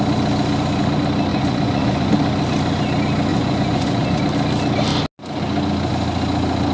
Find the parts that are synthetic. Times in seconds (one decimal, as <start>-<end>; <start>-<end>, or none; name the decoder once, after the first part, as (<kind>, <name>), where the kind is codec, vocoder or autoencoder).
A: 1.3-2.1 (vocoder, Vocos); 3.3-4.2